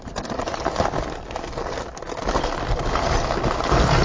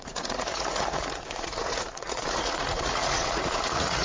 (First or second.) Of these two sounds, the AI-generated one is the second